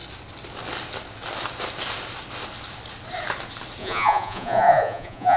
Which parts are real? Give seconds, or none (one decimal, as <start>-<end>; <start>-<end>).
0.0-3.8